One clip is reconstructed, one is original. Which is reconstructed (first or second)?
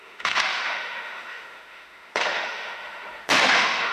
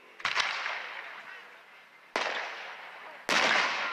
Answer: first